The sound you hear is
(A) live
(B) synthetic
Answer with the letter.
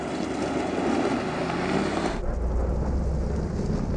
A